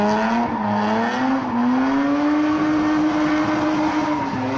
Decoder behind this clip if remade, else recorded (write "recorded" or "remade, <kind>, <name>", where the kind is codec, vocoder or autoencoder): recorded